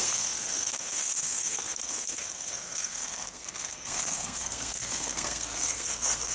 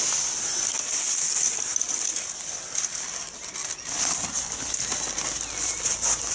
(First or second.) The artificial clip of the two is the first